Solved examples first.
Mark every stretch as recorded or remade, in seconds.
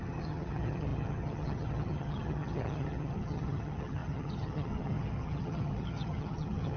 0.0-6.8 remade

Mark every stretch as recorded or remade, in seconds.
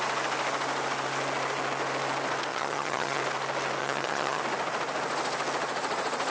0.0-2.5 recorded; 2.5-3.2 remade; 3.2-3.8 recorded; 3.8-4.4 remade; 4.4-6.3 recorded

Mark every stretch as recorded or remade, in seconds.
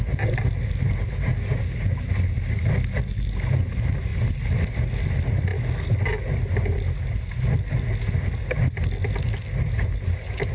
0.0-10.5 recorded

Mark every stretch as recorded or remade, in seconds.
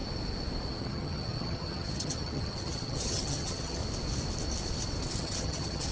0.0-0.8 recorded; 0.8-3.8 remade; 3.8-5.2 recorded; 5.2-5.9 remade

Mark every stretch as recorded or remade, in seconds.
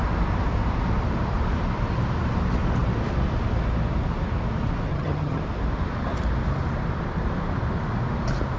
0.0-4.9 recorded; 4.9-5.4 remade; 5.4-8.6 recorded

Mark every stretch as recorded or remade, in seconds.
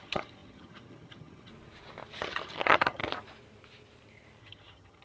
0.0-1.5 remade; 1.5-2.2 recorded; 2.2-3.0 remade; 3.0-4.4 recorded; 4.4-5.0 remade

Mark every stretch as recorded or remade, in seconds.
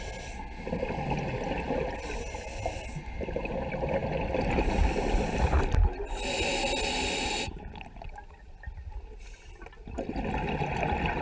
0.0-11.2 recorded